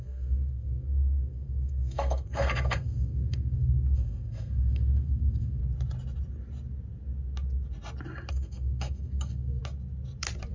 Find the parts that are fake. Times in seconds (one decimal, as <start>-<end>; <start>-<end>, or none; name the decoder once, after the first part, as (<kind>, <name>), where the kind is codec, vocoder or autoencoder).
0.0-5.6 (codec, SNAC); 8.3-9.6

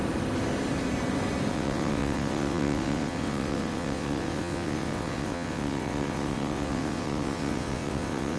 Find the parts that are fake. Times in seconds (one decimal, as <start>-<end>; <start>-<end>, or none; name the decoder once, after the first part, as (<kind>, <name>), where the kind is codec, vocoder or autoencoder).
1.5-8.4 (vocoder, WaveNeXt)

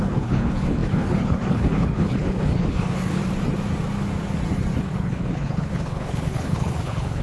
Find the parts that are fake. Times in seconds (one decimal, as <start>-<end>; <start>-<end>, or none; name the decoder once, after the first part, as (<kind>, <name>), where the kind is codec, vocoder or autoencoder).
0.0-3.2 (codec, HILCodec); 4.8-7.2

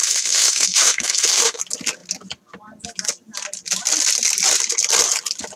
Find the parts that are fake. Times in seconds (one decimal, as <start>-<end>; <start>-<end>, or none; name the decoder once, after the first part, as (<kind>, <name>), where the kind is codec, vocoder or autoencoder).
0.0-1.6 (autoencoder, DAC-VAE)